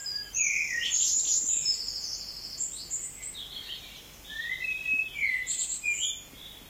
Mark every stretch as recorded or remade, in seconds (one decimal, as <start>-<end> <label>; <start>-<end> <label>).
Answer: 0.0-1.5 remade; 1.5-2.1 recorded; 2.1-5.0 remade; 5.0-6.7 recorded